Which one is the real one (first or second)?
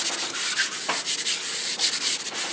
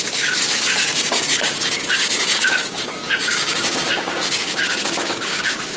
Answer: first